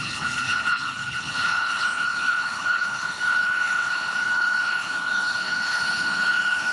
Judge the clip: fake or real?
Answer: fake